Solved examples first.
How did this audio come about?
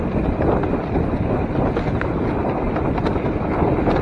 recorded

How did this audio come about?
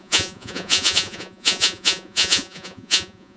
remade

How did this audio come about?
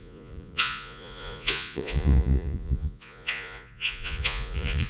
remade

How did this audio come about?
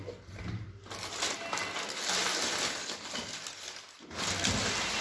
recorded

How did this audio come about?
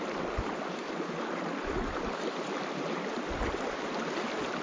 recorded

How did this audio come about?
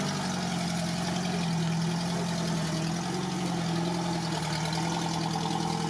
recorded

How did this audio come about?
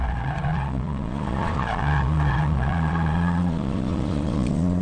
remade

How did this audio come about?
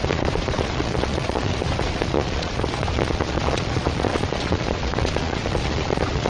remade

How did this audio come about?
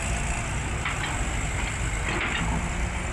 recorded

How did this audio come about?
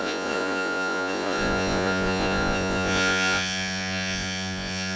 remade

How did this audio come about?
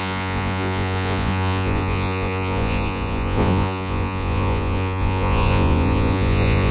remade